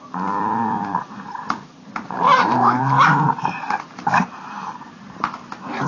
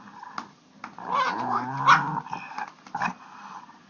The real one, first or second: second